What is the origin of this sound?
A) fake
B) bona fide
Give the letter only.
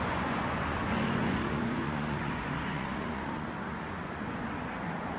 A